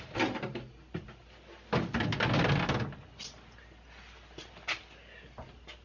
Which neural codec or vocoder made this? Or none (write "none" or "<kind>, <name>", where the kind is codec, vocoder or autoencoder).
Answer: none